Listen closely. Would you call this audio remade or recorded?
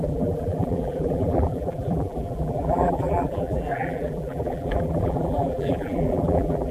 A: remade